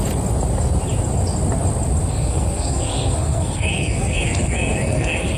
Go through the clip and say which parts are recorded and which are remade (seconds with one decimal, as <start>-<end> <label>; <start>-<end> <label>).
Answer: 0.0-2.1 recorded; 2.1-5.4 remade